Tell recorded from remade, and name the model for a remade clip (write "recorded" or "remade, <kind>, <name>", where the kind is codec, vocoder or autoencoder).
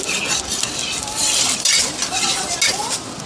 remade, vocoder, BigVGAN v2